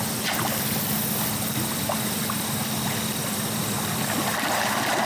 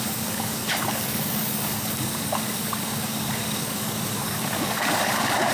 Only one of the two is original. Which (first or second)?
first